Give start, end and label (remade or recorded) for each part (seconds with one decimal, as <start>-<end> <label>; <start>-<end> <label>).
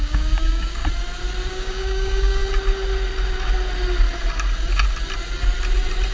0.0-0.8 remade; 0.8-1.5 recorded; 1.5-2.4 remade; 2.4-6.1 recorded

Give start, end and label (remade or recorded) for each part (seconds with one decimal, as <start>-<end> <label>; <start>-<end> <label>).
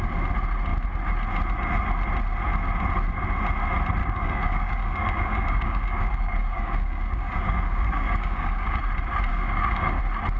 0.0-4.0 recorded; 4.0-8.8 remade; 8.8-9.3 recorded; 9.3-10.0 remade; 10.0-10.4 recorded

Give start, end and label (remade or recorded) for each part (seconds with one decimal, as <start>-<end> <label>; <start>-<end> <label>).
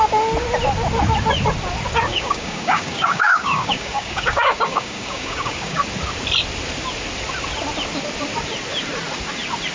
0.0-2.1 recorded; 2.1-5.8 remade; 5.8-9.7 recorded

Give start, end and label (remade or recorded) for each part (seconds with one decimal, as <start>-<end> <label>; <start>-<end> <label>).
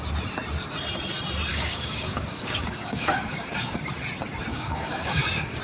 0.0-1.5 recorded; 1.5-3.8 remade; 3.8-4.5 recorded; 4.5-5.6 remade